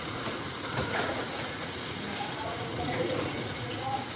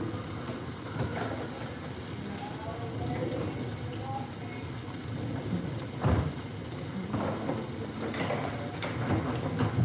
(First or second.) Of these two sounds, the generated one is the first